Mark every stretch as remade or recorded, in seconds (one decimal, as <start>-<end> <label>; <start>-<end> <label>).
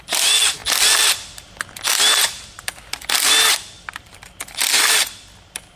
0.0-5.8 recorded